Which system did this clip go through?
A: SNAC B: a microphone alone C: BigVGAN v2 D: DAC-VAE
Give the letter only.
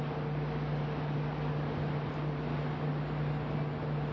B